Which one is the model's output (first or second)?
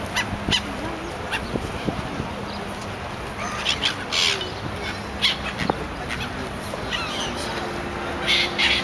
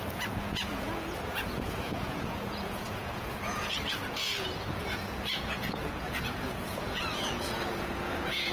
second